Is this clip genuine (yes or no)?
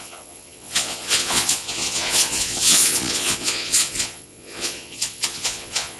no